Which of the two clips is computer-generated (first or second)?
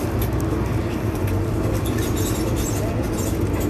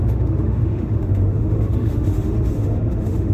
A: second